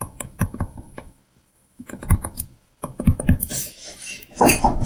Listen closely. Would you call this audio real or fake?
fake